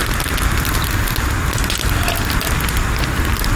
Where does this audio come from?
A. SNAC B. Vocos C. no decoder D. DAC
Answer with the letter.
C